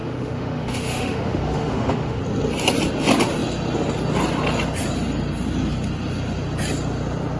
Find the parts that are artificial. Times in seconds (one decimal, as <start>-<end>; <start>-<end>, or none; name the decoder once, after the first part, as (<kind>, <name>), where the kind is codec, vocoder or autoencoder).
0.0-2.2 (autoencoder, DAC-VAE)

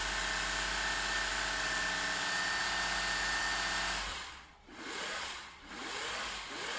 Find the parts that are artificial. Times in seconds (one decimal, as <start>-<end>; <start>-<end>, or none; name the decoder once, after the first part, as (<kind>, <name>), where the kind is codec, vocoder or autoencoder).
4.1-5.7 (vocoder, Vocos)

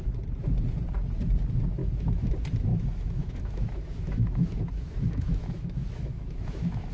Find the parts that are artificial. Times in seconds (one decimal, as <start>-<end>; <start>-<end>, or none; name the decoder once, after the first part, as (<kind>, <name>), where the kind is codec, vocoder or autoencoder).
1.8-2.3 (autoencoder, DAC-VAE); 2.7-6.9

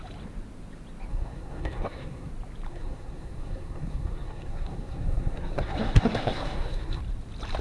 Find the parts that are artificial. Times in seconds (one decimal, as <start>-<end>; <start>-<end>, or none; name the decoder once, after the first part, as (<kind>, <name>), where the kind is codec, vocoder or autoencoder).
1.1-2.3 (codec, SNAC); 2.7-7.0

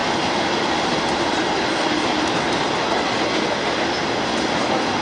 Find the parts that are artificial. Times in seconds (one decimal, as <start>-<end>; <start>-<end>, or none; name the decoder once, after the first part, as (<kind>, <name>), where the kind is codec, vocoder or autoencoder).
none

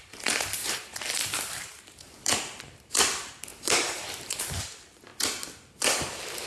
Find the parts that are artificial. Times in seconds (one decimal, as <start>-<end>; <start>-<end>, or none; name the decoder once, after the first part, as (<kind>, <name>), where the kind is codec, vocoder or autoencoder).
0.0-5.1 (vocoder, BigVGAN v2)

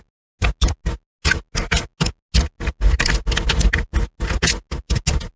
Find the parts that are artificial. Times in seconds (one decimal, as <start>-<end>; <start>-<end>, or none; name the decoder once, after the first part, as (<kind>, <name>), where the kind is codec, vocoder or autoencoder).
none